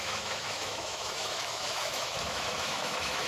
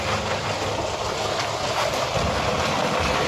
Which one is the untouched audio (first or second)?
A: second